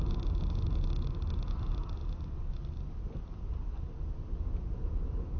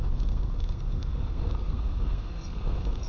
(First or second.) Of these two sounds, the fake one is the second